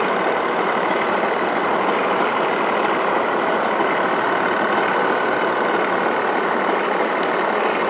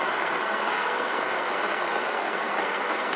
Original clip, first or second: first